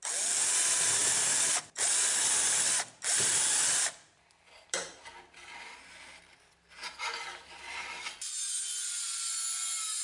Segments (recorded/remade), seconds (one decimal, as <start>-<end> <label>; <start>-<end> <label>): 0.0-1.0 recorded; 1.0-4.9 remade; 4.9-10.0 recorded